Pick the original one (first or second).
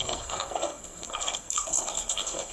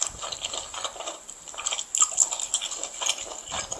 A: second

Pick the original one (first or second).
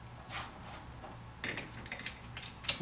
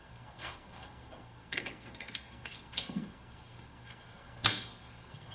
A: first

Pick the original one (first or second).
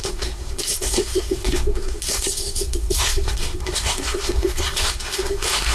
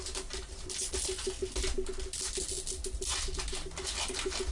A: second